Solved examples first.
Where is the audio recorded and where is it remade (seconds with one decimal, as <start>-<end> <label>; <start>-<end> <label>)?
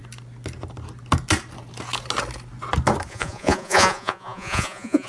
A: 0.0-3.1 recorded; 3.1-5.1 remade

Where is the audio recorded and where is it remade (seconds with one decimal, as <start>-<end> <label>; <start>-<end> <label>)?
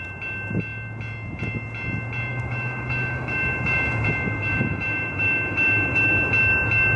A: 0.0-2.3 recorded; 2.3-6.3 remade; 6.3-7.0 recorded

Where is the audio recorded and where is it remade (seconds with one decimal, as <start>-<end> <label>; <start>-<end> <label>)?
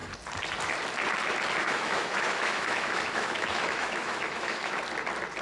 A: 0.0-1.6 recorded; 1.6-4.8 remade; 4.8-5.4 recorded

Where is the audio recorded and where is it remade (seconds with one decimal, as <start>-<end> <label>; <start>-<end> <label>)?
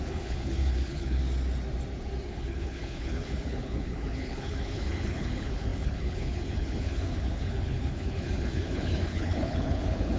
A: 0.0-1.2 remade; 1.2-2.3 recorded; 2.3-10.2 remade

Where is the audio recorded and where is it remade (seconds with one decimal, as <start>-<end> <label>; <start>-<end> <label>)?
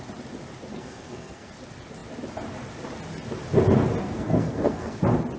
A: 0.0-0.7 recorded; 0.7-1.5 remade; 1.5-4.0 recorded; 4.0-5.0 remade; 5.0-5.4 recorded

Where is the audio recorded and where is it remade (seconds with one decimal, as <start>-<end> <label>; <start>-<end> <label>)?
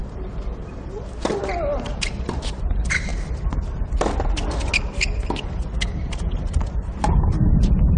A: 0.0-2.1 remade; 2.1-8.0 recorded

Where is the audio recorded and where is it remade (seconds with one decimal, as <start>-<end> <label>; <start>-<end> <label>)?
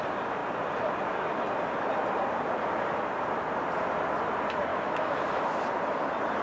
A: 0.0-4.7 recorded; 4.7-5.6 remade; 5.6-6.4 recorded